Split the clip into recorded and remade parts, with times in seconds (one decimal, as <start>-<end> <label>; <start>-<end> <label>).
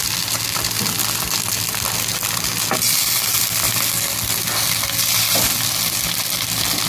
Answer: 0.0-6.9 recorded